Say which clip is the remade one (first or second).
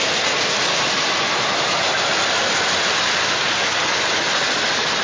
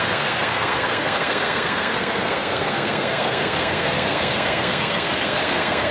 second